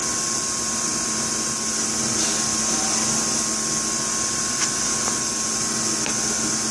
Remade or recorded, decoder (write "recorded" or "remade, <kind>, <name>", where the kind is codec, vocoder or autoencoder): recorded